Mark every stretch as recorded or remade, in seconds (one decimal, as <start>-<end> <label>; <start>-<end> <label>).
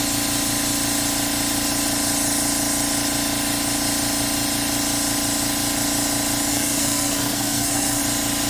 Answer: 0.0-6.5 recorded; 6.5-8.0 remade; 8.0-8.5 recorded